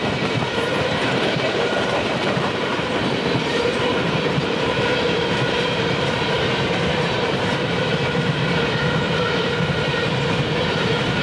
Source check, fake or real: fake